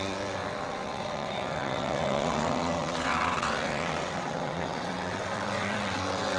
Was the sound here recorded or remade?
remade